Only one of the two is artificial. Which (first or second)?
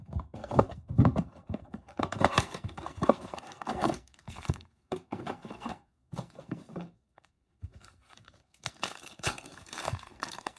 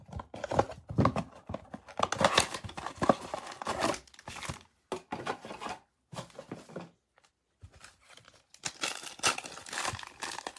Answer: first